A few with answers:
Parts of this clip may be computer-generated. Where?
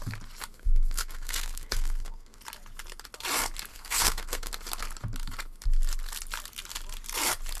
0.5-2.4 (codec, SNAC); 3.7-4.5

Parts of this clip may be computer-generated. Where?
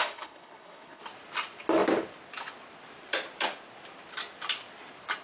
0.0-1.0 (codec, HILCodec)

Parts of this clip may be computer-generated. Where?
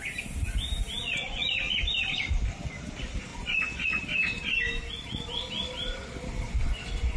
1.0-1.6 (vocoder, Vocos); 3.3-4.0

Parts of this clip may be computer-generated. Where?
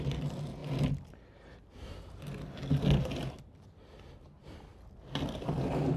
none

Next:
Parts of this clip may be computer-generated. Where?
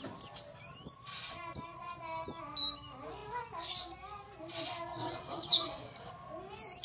5.0-6.1 (vocoder, WaveNeXt)